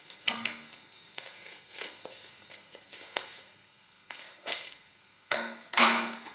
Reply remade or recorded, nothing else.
remade